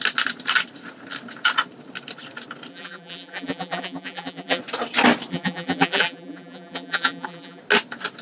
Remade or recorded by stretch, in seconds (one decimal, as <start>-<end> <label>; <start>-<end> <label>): 0.0-2.7 recorded; 2.7-4.6 remade; 4.6-5.3 recorded; 5.3-7.6 remade; 7.6-8.2 recorded